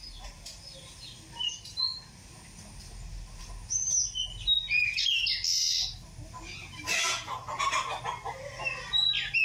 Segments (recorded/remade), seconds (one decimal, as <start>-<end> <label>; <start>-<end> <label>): 0.0-9.4 recorded